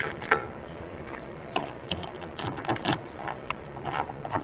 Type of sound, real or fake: fake